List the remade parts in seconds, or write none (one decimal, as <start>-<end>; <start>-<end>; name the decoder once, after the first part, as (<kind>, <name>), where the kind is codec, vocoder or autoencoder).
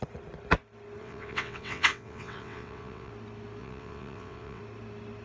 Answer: 1.0-3.1 (vocoder, WaveNeXt); 3.6-4.6